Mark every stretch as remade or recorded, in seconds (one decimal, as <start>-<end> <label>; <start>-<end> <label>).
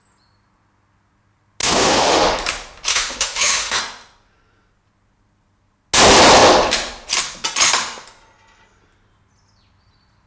0.0-1.6 recorded; 1.6-2.4 remade; 2.4-2.9 recorded; 2.9-3.8 remade; 3.8-10.3 recorded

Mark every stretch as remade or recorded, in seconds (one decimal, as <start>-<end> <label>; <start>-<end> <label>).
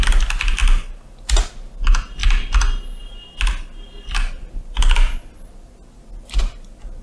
0.0-7.0 recorded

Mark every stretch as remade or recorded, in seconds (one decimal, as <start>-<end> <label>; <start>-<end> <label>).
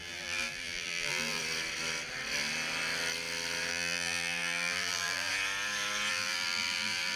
0.0-1.4 remade; 1.4-3.7 recorded; 3.7-5.3 remade; 5.3-6.1 recorded; 6.1-7.2 remade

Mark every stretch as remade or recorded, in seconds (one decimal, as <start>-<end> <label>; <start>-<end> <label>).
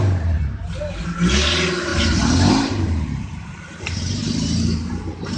0.0-1.9 remade; 1.9-2.5 recorded; 2.5-5.4 remade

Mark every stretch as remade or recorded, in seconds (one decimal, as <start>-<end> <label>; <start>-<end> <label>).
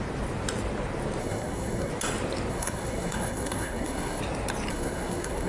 0.0-1.2 recorded; 1.2-1.9 remade; 1.9-2.5 recorded; 2.5-4.2 remade; 4.2-4.7 recorded; 4.7-5.5 remade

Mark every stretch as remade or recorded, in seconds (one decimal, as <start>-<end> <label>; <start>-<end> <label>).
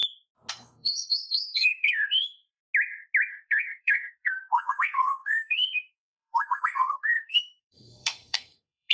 0.0-0.5 recorded; 0.5-2.6 remade; 2.6-3.3 recorded; 3.3-8.9 remade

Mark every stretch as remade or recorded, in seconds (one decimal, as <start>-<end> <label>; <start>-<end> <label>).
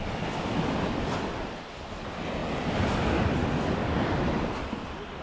0.0-5.2 recorded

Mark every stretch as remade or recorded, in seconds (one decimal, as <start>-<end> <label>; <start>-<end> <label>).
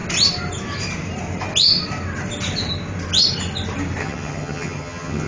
0.0-4.0 recorded; 4.0-5.3 remade